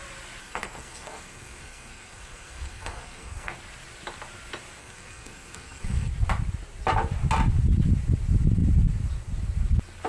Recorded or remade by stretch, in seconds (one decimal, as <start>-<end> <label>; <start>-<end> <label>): 0.0-0.4 recorded; 0.4-3.5 remade; 3.5-4.8 recorded; 4.8-6.1 remade; 6.1-10.1 recorded